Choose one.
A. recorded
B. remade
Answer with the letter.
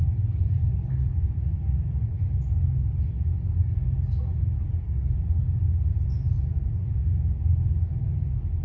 A